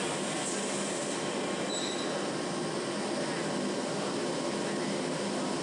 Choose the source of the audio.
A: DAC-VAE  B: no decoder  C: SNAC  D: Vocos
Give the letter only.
B